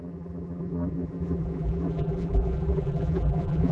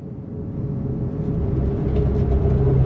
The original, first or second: second